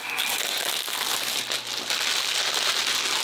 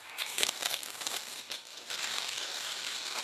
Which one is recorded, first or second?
first